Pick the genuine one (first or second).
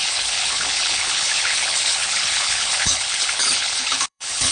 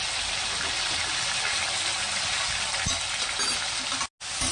second